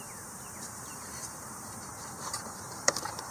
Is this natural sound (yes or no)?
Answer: no